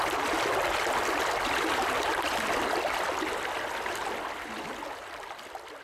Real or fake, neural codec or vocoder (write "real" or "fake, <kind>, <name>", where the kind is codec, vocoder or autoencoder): real